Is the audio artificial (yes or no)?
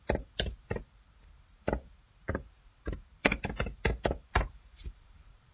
yes